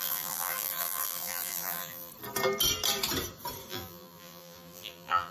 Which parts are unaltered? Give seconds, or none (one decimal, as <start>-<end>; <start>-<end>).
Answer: 2.1-3.7